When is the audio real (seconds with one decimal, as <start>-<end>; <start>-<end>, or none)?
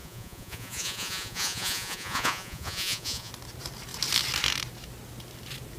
3.3-5.8